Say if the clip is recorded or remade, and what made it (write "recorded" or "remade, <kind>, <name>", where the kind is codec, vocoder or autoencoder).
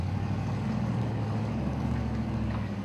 remade, codec, DAC